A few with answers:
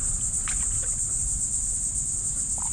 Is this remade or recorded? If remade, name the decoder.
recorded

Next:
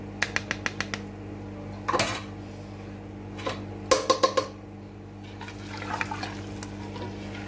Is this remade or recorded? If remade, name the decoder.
recorded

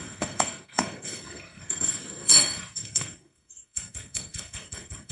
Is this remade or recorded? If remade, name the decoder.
remade, codec, SNAC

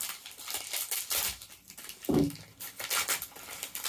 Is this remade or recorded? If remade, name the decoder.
recorded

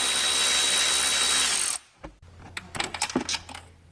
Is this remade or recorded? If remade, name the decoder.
recorded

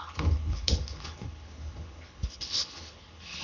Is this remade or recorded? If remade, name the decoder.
remade, codec, HILCodec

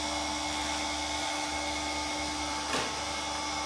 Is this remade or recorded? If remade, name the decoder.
recorded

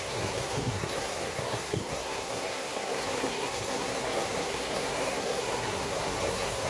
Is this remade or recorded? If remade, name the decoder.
remade, codec, SNAC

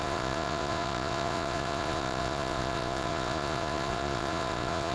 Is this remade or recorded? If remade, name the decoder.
remade, vocoder, Vocos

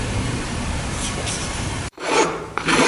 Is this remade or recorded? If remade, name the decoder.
remade, vocoder, BigVGAN v2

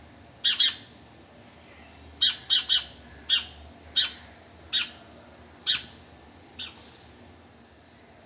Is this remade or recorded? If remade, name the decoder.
recorded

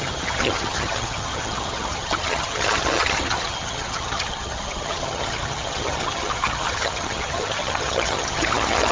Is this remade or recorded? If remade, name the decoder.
remade, vocoder, HiFi-GAN